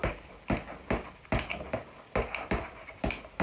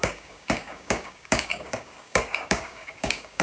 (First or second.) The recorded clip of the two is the first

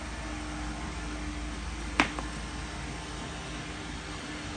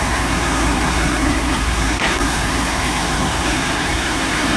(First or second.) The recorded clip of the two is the first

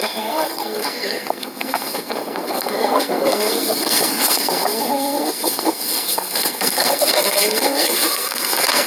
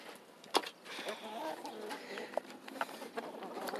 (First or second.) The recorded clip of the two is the second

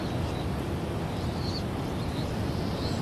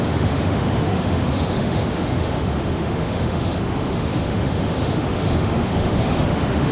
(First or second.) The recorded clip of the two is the first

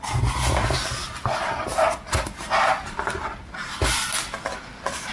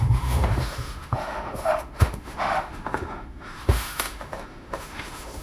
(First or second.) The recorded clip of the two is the first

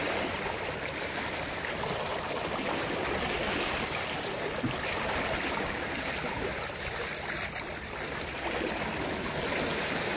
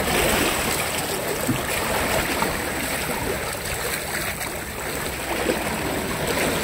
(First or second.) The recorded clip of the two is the second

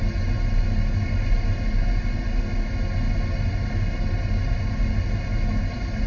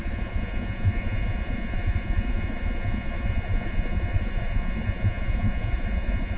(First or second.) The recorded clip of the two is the first